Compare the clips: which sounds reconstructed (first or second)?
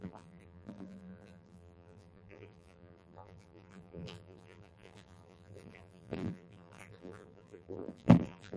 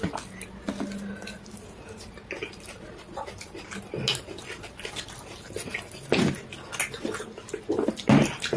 first